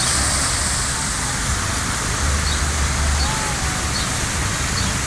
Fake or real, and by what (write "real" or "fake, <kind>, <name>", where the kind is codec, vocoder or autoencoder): real